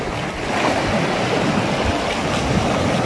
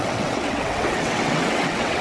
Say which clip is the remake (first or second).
second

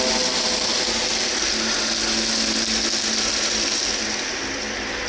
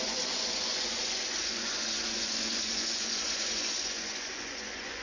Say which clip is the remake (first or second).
second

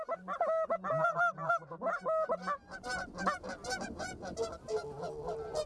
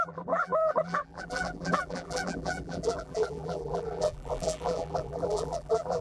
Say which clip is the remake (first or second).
second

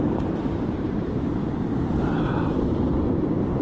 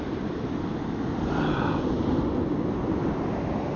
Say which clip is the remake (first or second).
first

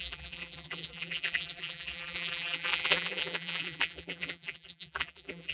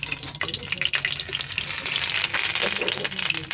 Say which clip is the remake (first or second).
first